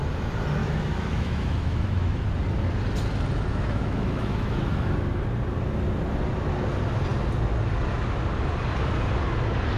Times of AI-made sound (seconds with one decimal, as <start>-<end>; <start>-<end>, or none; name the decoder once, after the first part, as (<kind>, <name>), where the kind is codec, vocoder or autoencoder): 0.6-2.2 (autoencoder, DAC-VAE); 3.5-4.9